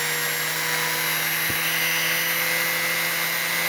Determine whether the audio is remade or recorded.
recorded